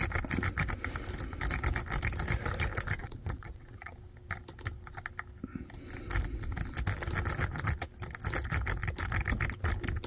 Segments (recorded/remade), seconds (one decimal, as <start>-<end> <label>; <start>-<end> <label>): 0.0-3.0 recorded; 3.0-3.9 remade; 3.9-10.1 recorded